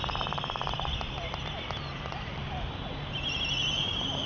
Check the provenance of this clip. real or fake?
fake